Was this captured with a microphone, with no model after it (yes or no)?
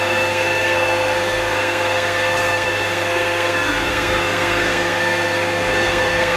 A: no